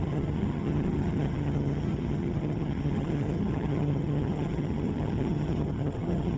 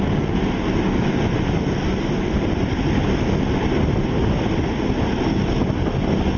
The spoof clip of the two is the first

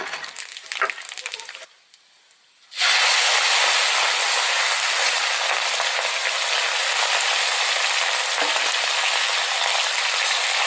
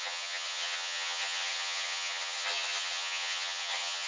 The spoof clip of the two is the second